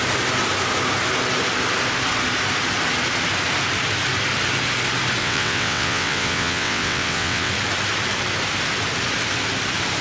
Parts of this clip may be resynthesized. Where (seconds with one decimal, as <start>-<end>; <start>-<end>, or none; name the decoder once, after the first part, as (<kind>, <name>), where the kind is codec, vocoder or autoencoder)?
5.2-7.5 (vocoder, WaveNeXt)